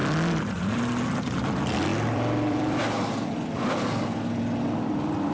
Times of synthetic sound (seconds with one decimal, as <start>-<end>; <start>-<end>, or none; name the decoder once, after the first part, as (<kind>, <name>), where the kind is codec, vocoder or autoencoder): 0.0-0.6 (vocoder, BigVGAN v2); 1.9-4.4